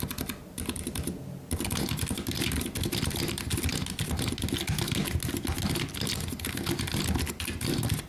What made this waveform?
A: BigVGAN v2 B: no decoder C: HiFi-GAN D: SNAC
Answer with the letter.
B